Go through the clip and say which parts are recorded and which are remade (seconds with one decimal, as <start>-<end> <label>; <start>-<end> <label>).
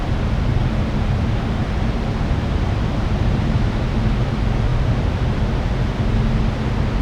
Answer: 0.0-0.6 recorded; 0.6-3.6 remade; 3.6-7.0 recorded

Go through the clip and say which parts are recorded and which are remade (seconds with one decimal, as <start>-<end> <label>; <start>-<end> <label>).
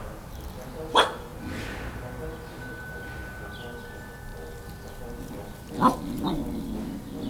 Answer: 0.0-7.3 recorded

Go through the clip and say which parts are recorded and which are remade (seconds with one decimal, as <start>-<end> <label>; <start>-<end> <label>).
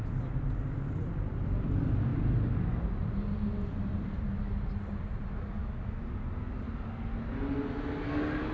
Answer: 0.0-8.5 recorded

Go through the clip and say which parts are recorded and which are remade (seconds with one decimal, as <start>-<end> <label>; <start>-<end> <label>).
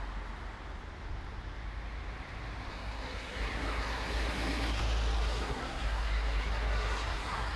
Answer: 0.0-2.7 recorded; 2.7-4.8 remade; 4.8-5.2 recorded; 5.2-7.6 remade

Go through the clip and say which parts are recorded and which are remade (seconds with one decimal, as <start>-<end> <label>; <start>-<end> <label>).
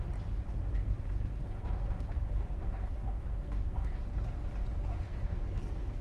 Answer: 0.0-0.6 recorded; 0.6-4.0 remade; 4.0-4.9 recorded; 4.9-6.0 remade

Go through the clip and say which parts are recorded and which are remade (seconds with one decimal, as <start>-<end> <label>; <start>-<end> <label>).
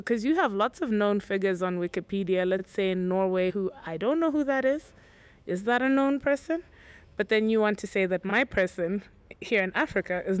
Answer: 0.0-8.3 remade; 8.3-10.4 recorded